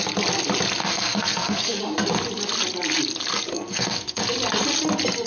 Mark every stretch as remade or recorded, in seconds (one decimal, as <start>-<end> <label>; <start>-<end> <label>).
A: 0.0-0.8 recorded; 0.8-1.8 remade; 1.8-3.5 recorded; 3.5-4.2 remade; 4.2-5.3 recorded